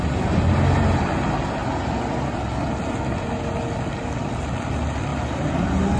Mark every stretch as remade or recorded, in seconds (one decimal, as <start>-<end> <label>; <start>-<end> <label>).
0.0-5.1 recorded; 5.1-5.6 remade; 5.6-6.0 recorded